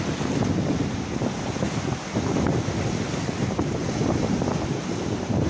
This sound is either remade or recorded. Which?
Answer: recorded